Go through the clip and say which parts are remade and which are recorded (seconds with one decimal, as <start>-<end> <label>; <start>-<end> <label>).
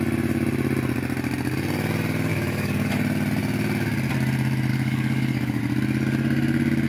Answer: 0.0-2.3 recorded; 2.3-2.9 remade; 2.9-4.7 recorded; 4.7-5.6 remade; 5.6-6.9 recorded